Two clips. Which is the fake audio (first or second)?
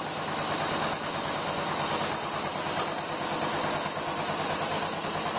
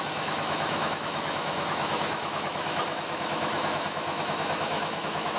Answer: second